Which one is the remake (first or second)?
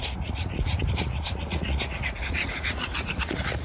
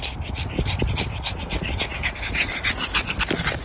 first